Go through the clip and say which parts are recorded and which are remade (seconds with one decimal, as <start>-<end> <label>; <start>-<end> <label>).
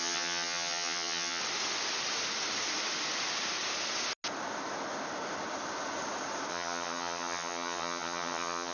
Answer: 0.0-1.4 remade; 1.4-6.5 recorded; 6.5-8.7 remade